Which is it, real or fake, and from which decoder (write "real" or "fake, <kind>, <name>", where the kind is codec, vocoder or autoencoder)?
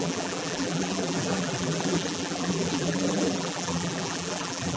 fake, vocoder, BigVGAN v2